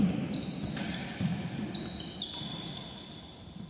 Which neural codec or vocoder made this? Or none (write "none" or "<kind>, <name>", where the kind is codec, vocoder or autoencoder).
none